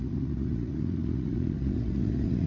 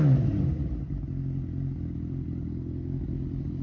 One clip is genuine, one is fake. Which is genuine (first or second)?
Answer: second